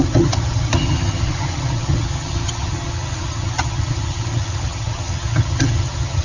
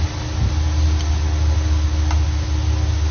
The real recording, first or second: second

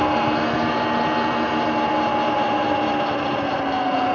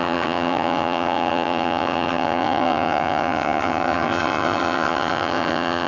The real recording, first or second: first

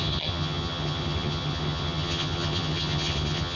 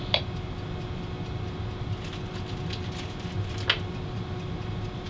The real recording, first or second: second